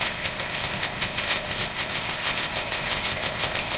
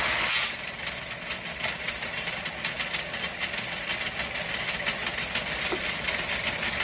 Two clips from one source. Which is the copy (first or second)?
first